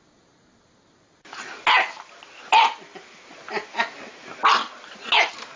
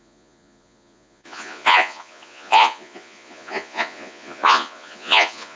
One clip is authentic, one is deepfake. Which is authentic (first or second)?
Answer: first